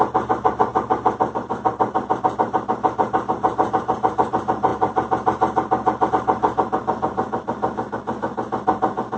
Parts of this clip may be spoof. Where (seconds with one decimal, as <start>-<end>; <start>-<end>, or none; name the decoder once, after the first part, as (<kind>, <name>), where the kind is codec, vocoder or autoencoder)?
0.0-9.2 (vocoder, BigVGAN v2)